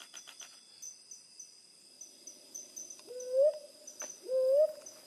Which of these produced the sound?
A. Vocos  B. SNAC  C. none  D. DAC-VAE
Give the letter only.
C